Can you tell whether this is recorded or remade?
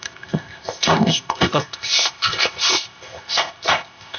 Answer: remade